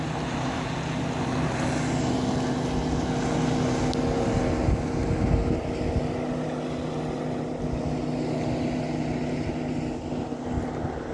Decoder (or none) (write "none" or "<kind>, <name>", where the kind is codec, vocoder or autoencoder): none